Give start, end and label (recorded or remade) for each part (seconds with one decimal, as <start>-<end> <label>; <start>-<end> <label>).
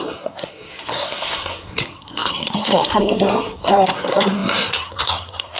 0.0-5.6 remade